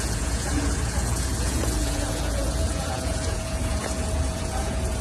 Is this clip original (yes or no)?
no